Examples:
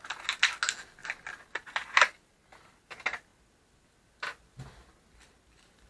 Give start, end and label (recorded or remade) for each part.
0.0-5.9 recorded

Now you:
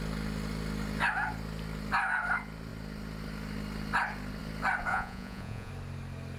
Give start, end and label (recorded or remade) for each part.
0.0-4.9 recorded; 4.9-5.7 remade; 5.7-6.4 recorded

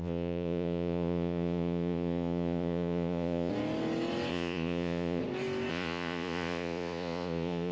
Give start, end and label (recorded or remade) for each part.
0.0-3.5 remade; 3.5-4.3 recorded; 4.3-5.2 remade; 5.2-5.7 recorded; 5.7-7.7 remade